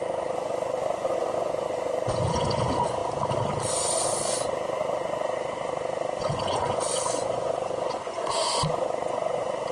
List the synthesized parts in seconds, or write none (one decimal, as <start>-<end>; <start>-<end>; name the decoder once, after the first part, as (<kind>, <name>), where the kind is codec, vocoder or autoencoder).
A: 0.0-3.0 (vocoder, Vocos); 6.2-9.7